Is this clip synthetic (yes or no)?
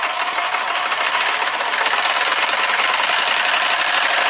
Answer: no